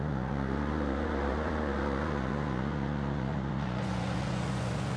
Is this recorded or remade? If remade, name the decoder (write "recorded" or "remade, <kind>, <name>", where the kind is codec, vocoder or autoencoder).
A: remade, vocoder, Vocos